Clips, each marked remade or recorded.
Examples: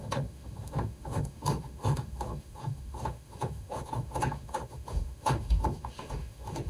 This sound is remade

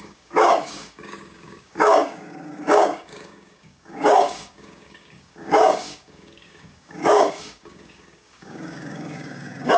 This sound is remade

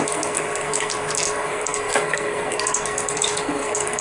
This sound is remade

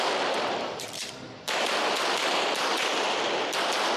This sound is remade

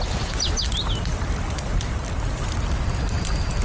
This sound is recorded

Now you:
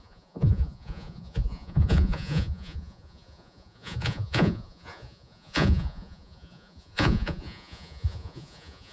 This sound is remade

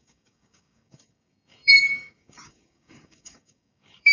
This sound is remade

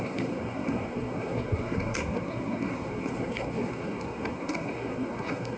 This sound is remade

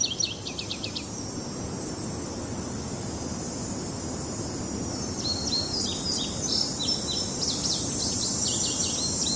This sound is recorded